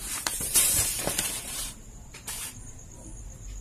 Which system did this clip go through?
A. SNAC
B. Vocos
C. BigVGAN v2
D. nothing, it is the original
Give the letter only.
C